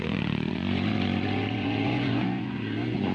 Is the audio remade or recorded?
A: remade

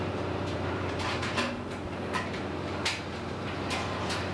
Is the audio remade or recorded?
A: remade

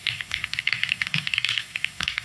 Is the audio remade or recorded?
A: remade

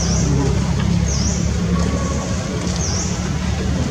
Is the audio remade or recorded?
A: recorded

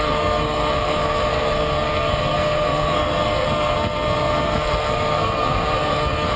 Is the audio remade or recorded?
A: remade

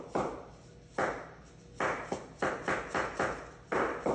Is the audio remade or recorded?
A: recorded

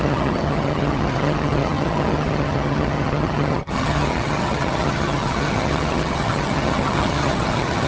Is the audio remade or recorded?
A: remade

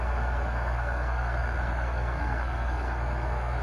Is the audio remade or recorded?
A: remade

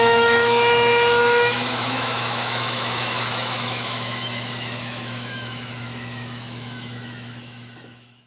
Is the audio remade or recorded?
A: remade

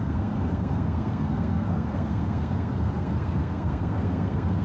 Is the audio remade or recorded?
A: remade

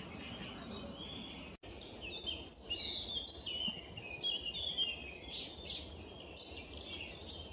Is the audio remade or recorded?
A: recorded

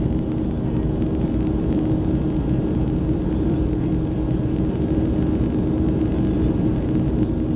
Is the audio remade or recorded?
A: recorded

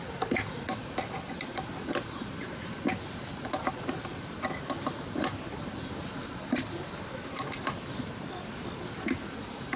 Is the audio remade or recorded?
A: recorded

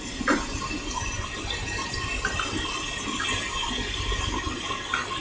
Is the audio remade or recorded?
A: recorded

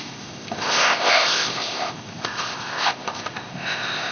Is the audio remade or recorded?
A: remade